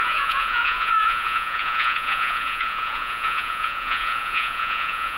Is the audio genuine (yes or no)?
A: no